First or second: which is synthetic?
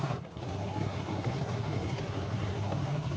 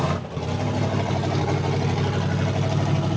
first